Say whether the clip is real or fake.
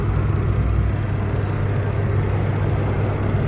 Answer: real